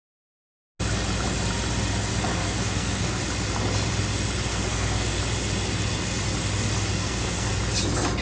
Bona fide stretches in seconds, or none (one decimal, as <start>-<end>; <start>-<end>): 0.0-2.1; 3.2-4.5; 5.2-6.9; 7.5-8.2